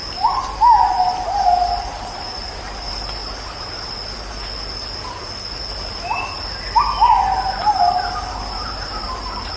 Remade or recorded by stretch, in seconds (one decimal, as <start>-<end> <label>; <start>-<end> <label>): 0.0-0.9 recorded; 0.9-3.2 remade; 3.2-7.2 recorded; 7.2-9.6 remade